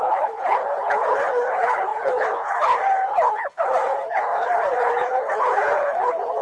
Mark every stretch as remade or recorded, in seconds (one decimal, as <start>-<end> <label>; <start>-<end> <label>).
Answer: 0.0-6.4 remade